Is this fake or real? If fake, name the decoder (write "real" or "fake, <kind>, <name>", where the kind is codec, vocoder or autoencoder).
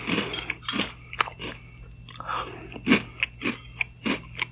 real